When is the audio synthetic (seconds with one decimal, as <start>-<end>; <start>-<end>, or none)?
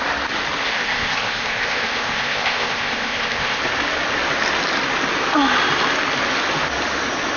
0.6-3.6